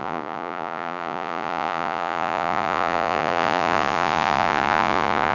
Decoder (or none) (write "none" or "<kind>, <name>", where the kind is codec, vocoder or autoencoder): vocoder, Vocos